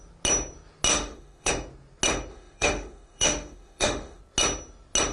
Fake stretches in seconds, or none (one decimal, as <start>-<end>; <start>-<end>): 0.9-1.5; 2.3-4.2